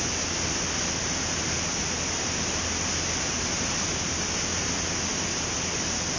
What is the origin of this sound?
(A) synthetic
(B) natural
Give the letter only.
B